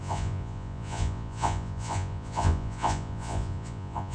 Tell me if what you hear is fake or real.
fake